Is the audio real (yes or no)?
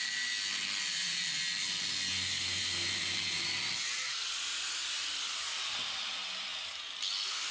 yes